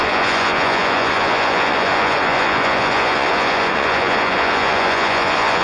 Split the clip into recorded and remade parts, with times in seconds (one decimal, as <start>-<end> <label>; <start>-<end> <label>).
0.0-5.6 remade